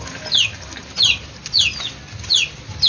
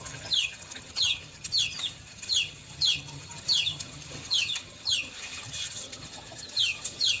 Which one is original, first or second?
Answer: first